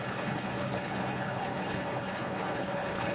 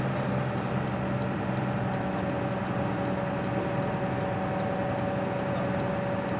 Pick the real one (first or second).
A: second